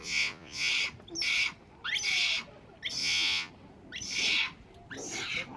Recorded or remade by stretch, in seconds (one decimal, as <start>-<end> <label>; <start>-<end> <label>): 0.0-0.7 remade; 0.7-3.0 recorded; 3.0-3.5 remade; 3.5-5.6 recorded